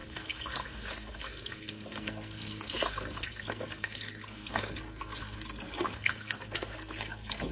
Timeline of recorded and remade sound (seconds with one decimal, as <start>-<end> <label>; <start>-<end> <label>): 0.0-7.5 remade